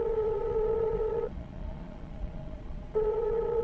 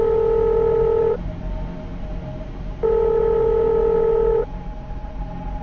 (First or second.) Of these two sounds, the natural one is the second